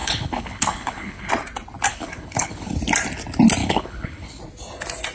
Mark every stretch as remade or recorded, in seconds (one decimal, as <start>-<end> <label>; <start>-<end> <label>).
0.0-1.3 remade; 1.3-1.9 recorded; 1.9-2.8 remade; 2.8-3.6 recorded; 3.6-4.4 remade; 4.4-5.1 recorded